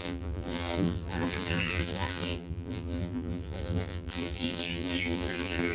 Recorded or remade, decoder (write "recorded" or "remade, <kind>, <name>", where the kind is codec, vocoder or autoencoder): remade, vocoder, BigVGAN v2